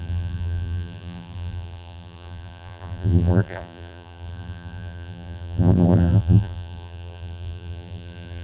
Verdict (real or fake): fake